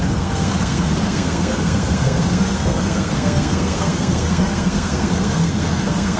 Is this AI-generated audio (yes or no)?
yes